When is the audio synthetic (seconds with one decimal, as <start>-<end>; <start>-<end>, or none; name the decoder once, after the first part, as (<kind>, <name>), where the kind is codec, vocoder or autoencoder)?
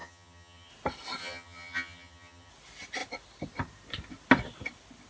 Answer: 0.0-0.7 (vocoder, HiFi-GAN); 1.2-2.5